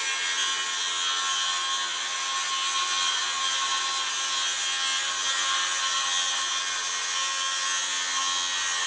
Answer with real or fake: real